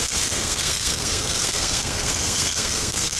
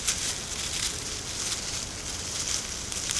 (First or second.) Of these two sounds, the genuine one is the second